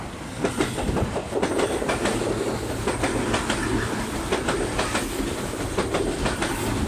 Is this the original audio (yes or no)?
yes